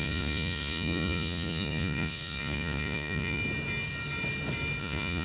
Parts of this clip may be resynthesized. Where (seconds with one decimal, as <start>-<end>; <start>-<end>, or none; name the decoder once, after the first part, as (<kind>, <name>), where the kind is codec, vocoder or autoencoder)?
0.0-3.4 (vocoder, Vocos); 4.8-5.2